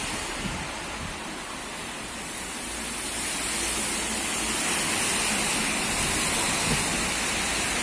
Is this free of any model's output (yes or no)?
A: yes